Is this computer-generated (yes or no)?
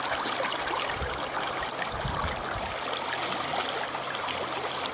no